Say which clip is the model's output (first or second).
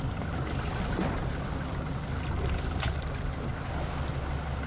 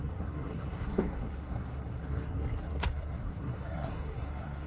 second